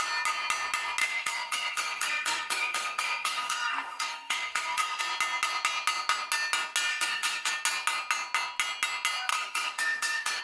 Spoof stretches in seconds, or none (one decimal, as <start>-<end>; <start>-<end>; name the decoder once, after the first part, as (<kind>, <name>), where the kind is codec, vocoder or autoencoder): 1.0-5.0 (codec, SNAC); 6.9-7.5; 9.3-10.4